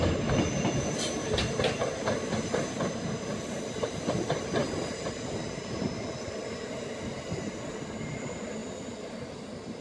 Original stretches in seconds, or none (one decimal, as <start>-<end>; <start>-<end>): 0.0-9.8